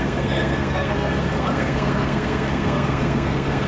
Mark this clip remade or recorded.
remade